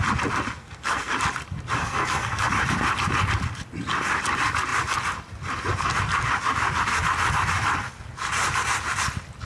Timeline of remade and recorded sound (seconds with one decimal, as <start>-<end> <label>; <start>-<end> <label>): 0.0-0.6 recorded; 0.6-1.1 remade; 1.1-1.8 recorded; 1.8-2.5 remade; 2.5-9.4 recorded